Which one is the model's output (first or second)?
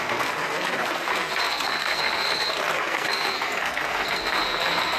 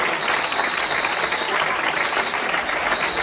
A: first